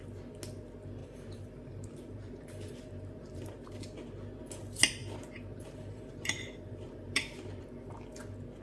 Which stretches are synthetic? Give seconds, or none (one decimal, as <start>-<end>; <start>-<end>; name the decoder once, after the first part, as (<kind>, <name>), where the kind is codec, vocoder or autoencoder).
1.0-3.7 (vocoder, BigVGAN v2); 5.0-7.6